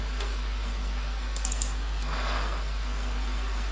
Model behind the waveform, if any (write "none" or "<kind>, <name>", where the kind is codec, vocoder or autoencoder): codec, SNAC